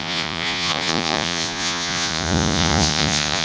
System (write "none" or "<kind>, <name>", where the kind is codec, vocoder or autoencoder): vocoder, Vocos